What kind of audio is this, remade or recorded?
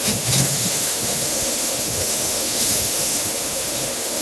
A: remade